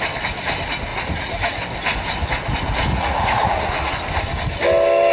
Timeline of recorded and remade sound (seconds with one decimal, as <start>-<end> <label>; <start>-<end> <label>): 0.0-0.9 recorded; 0.9-1.6 remade; 1.6-2.9 recorded; 2.9-3.9 remade; 3.9-5.1 recorded